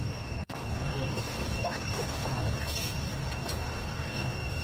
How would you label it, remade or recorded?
remade